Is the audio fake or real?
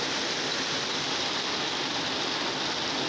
real